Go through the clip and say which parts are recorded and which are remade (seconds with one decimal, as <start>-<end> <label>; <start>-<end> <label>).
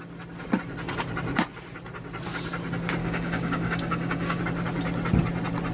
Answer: 0.0-3.0 recorded; 3.0-4.4 remade; 4.4-5.7 recorded